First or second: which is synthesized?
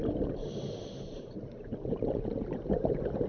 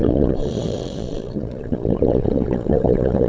second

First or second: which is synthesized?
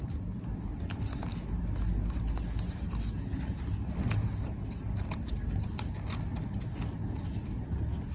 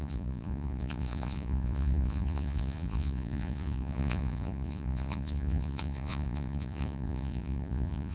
second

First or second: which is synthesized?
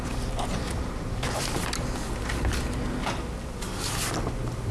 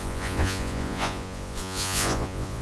second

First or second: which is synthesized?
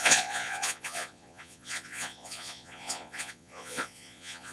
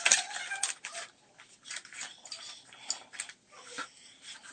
first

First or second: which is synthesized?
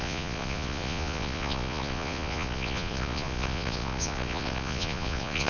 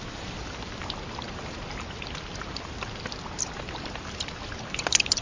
first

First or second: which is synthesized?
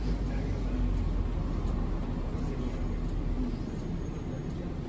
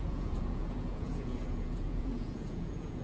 second